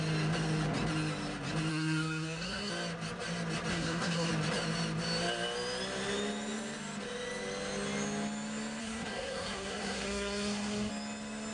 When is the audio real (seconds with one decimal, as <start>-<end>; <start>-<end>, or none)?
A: 0.0-1.7; 2.7-3.7; 4.3-8.8; 10.9-11.5